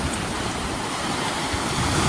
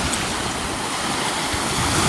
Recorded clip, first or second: second